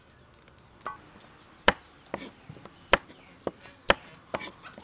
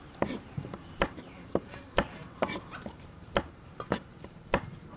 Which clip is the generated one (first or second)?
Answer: second